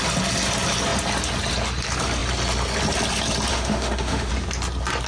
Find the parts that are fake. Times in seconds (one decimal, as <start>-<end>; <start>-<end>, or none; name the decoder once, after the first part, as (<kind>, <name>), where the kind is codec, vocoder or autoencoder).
3.5-4.3 (autoencoder, DAC-VAE)